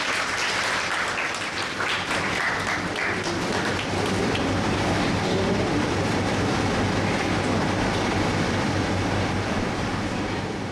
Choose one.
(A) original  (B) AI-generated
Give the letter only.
B